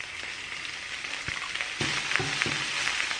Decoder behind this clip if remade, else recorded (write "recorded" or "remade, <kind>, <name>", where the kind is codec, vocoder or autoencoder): recorded